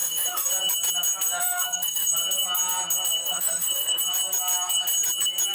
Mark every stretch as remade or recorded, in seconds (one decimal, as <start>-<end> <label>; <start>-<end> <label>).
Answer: 0.0-0.5 remade; 0.5-1.4 recorded; 1.4-2.1 remade; 2.1-3.2 recorded; 3.2-4.0 remade; 4.0-5.5 recorded